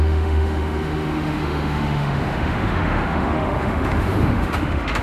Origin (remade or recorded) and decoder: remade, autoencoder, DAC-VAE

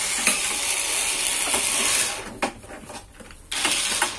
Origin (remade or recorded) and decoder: recorded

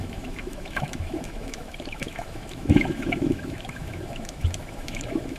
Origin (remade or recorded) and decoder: remade, autoencoder, DAC-VAE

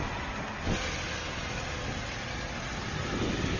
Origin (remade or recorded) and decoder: recorded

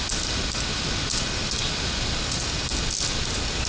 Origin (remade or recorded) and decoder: recorded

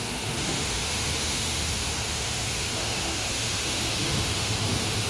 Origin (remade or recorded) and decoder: remade, autoencoder, DAC-VAE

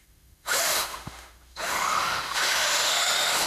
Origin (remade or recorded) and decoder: remade, autoencoder, DAC-VAE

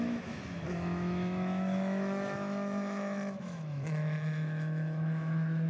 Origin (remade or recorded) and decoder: remade, autoencoder, DAC-VAE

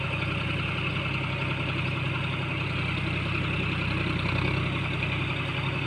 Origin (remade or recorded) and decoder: recorded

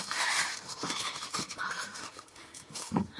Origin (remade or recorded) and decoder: remade, autoencoder, DAC-VAE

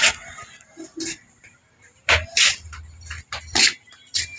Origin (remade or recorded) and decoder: recorded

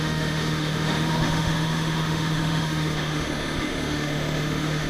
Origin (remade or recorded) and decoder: remade, autoencoder, DAC-VAE